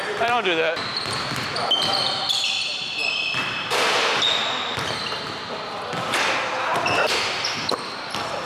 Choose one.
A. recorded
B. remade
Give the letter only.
B